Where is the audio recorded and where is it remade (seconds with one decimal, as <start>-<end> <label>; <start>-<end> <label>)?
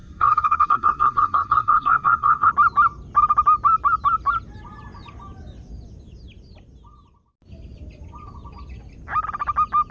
0.0-2.5 remade; 2.5-9.9 recorded